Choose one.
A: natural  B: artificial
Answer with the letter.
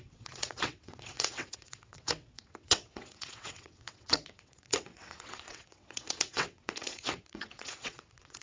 B